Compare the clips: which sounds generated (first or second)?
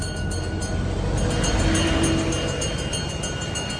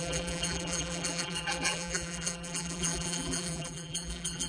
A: second